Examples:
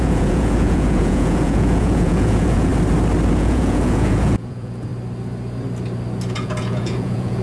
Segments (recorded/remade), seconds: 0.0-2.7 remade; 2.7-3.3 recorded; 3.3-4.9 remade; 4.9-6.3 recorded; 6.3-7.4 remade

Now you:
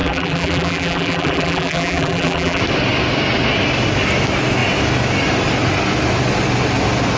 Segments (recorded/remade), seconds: 0.0-2.6 remade; 2.6-7.2 recorded

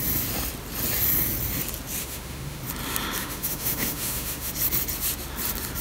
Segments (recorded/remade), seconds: 0.0-2.0 recorded; 2.0-2.6 remade; 2.6-3.2 recorded; 3.2-4.5 remade; 4.5-5.8 recorded

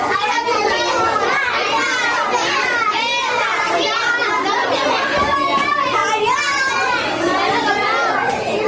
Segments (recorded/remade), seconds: 0.0-3.5 recorded; 3.5-4.7 remade; 4.7-6.0 recorded; 6.0-6.9 remade; 6.9-8.7 recorded

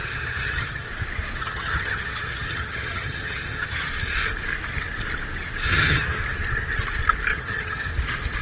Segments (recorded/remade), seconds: 0.0-0.9 remade; 0.9-1.4 recorded; 1.4-3.9 remade; 3.9-5.7 recorded; 5.7-6.2 remade; 6.2-7.3 recorded; 7.3-7.9 remade; 7.9-8.4 recorded

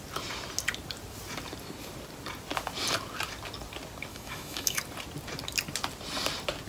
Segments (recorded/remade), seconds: 0.0-4.1 recorded; 4.1-4.8 remade; 4.8-6.7 recorded

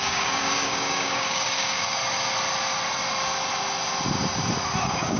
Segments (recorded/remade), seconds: 0.0-2.0 remade; 2.0-4.8 recorded; 4.8-5.2 remade